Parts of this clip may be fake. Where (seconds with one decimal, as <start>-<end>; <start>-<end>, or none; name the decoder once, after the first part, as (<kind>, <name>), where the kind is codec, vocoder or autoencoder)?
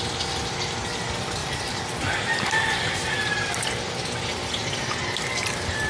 1.4-3.6 (vocoder, BigVGAN v2)